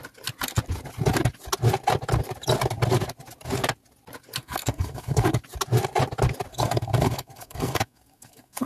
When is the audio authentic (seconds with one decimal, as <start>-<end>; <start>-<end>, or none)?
0.0-4.4; 5.4-6.5